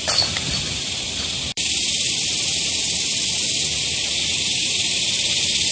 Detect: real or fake fake